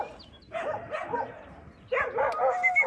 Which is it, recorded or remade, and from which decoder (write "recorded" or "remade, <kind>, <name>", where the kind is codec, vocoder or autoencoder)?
recorded